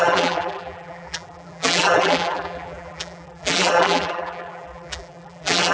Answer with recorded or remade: remade